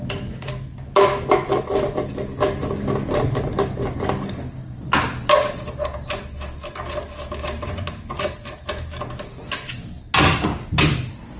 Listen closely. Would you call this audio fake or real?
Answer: real